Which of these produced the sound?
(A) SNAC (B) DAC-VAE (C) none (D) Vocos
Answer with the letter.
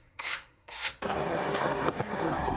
A